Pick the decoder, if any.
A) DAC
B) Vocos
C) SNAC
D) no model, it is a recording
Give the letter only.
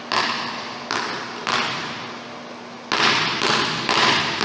D